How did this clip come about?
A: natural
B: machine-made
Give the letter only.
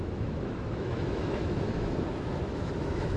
B